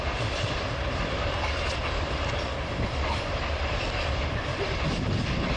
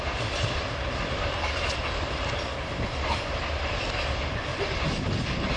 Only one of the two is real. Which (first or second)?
second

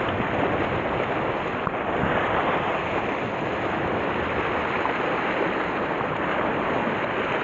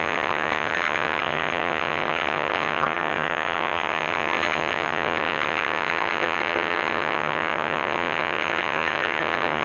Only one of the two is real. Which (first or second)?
first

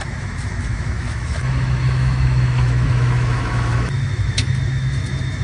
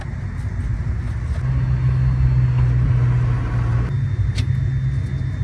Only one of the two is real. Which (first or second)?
second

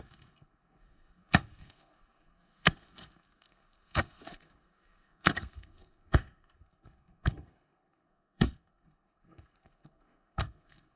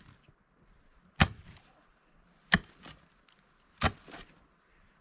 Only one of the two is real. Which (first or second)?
second